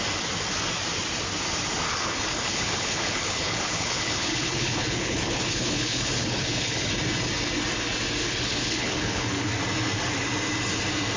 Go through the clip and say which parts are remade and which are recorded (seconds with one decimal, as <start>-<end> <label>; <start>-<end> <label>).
0.0-1.9 recorded; 1.9-6.9 remade; 6.9-8.2 recorded; 8.2-9.5 remade; 9.5-11.2 recorded